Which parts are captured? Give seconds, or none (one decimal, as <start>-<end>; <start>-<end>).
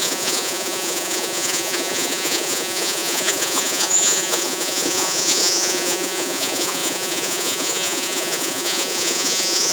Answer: none